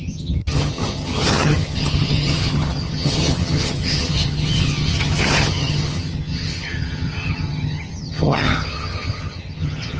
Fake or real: fake